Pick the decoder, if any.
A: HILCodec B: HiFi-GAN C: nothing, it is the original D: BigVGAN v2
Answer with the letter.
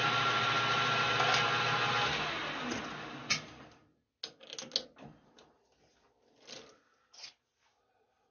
C